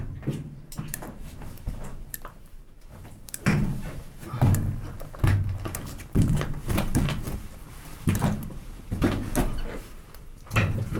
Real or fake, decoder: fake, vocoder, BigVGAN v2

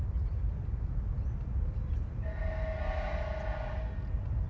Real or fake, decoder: real